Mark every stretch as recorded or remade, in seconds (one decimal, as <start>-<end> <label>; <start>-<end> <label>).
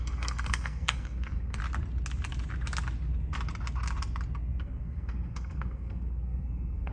0.0-1.6 remade; 1.6-4.6 recorded; 4.6-6.9 remade